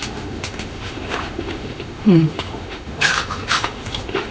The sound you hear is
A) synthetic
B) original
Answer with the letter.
A